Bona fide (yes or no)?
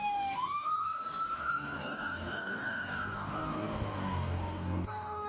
no